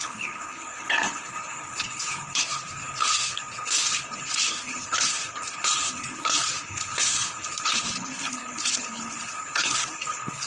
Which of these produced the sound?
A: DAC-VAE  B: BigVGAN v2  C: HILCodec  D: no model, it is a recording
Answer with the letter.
C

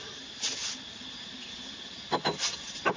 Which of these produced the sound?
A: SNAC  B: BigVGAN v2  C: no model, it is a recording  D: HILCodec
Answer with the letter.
C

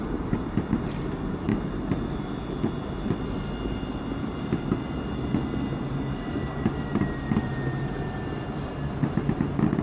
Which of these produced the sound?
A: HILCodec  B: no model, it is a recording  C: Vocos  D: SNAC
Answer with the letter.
B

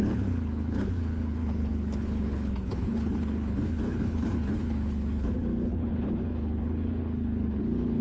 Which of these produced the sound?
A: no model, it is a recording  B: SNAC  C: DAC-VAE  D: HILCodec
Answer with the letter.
D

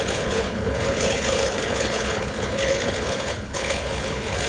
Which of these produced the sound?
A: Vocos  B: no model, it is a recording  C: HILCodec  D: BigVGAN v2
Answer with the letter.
C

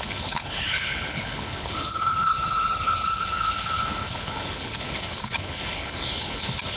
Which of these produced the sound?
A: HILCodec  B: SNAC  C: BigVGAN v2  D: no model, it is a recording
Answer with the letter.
A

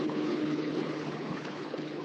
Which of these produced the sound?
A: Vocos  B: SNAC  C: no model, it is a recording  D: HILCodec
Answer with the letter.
D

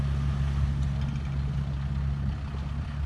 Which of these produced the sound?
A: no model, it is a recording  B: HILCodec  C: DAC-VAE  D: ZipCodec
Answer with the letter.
A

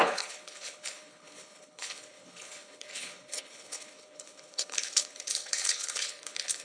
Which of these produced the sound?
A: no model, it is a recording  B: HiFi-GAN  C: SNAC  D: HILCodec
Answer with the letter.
D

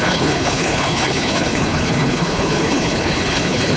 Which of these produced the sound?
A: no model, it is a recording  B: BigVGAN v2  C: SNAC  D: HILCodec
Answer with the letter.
D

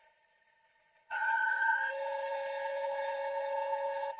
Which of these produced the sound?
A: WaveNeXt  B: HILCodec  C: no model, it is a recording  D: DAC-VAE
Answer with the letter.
B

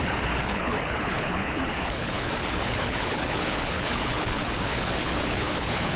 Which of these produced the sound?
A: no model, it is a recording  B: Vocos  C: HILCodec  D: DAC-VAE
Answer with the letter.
C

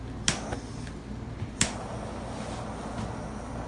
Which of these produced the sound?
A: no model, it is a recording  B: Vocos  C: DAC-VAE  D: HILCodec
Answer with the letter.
A